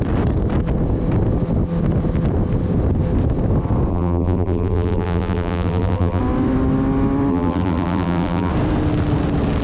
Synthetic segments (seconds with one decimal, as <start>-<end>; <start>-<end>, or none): 3.9-6.2; 7.3-8.5